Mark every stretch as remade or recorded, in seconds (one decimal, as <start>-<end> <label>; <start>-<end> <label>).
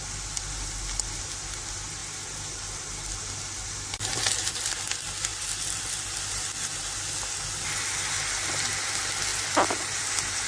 0.0-10.5 recorded